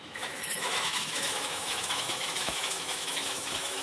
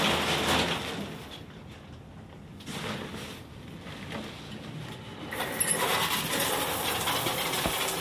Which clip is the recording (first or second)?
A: second